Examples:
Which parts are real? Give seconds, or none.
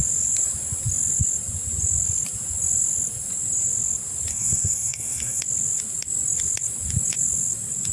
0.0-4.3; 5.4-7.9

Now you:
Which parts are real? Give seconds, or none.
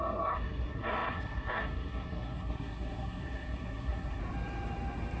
4.2-5.2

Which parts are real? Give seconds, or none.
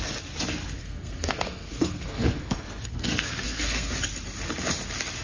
0.0-0.8; 3.9-5.2